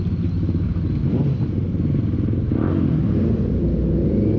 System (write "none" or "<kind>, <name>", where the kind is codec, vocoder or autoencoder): none